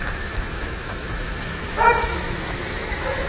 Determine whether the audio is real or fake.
fake